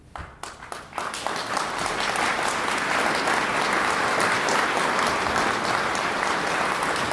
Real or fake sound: real